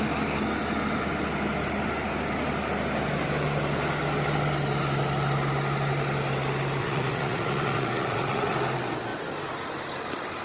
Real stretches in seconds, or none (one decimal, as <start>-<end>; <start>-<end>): 0.0-6.8; 8.6-10.4